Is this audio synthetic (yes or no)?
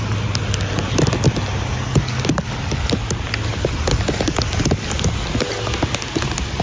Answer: no